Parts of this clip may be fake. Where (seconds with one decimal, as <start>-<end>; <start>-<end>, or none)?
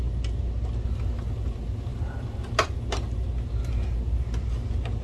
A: none